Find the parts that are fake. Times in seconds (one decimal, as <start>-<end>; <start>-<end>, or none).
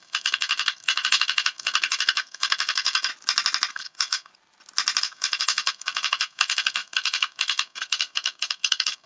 0.0-3.1; 3.7-4.3; 5.0-9.1